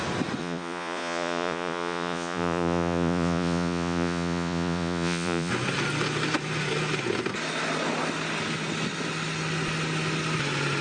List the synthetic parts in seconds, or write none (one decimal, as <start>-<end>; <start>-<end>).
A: 0.4-5.5